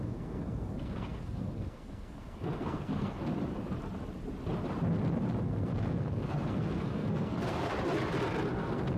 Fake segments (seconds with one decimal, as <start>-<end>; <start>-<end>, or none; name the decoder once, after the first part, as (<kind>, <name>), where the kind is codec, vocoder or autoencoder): 0.0-3.2 (codec, SNAC); 5.4-7.7; 8.5-9.0